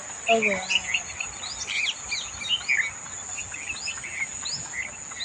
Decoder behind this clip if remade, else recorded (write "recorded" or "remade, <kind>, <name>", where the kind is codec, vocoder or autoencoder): recorded